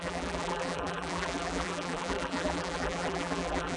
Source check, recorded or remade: remade